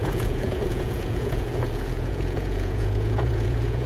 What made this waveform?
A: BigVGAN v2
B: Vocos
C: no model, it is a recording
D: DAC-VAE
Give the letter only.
B